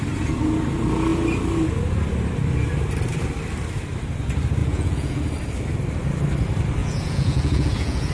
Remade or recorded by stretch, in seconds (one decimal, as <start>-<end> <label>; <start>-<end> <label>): 0.0-4.6 recorded; 4.6-5.2 remade; 5.2-6.8 recorded; 6.8-8.1 remade